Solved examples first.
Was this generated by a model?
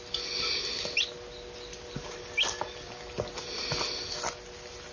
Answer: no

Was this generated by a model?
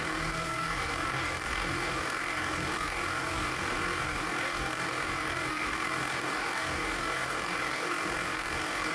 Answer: yes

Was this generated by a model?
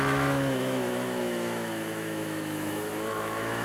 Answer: yes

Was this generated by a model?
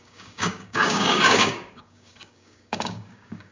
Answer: yes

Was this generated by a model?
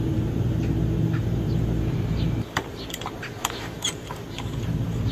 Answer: yes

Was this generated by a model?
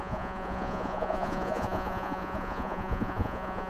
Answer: yes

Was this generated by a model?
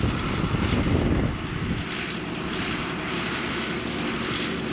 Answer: no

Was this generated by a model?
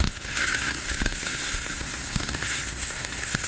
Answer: yes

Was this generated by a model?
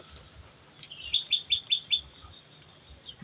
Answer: no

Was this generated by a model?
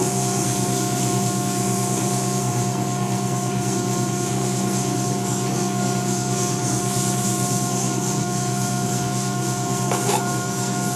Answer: yes